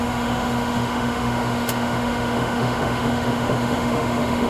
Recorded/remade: remade